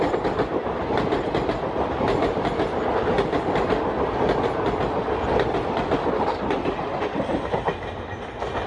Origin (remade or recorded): recorded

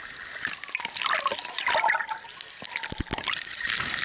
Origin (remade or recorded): recorded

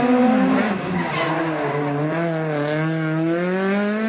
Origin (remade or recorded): recorded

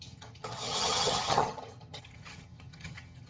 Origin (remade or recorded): remade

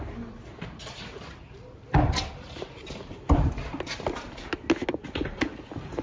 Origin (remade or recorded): recorded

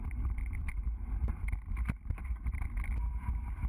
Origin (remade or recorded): remade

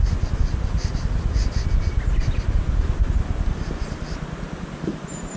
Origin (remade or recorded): recorded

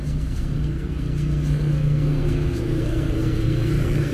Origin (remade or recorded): remade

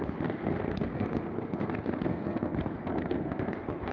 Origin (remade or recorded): remade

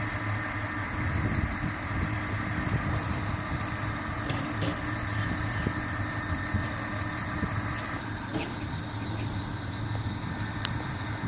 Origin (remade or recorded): recorded